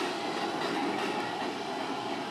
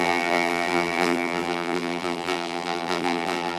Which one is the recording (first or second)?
first